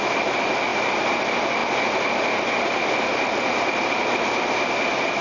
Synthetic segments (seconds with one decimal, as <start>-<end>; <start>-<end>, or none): 0.7-1.2